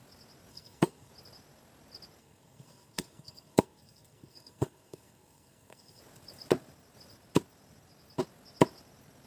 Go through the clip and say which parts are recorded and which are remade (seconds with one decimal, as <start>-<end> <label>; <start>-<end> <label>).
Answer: 0.0-0.5 recorded; 0.5-1.1 remade; 1.1-2.2 recorded; 2.2-6.0 remade; 6.0-9.3 recorded